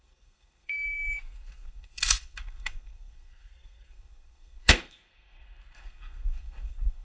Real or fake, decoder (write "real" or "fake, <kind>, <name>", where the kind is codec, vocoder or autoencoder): fake, codec, SNAC